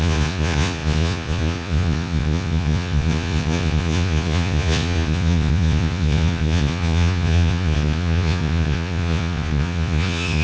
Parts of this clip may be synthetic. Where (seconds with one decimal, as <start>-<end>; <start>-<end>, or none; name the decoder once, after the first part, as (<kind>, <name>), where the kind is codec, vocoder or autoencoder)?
0.0-10.4 (vocoder, Vocos)